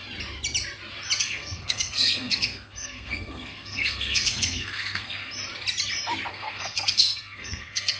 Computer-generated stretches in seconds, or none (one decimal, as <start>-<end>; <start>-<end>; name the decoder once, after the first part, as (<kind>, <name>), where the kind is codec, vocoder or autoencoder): 1.2-5.3 (codec, SNAC); 6.3-8.0